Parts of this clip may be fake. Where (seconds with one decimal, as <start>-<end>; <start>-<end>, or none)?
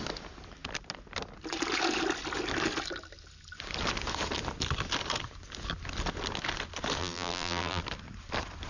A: 7.0-7.8